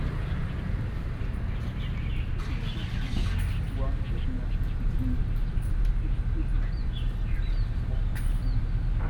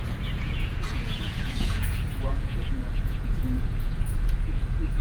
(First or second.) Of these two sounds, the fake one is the second